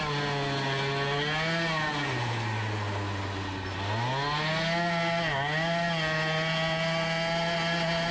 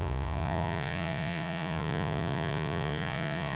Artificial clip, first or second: second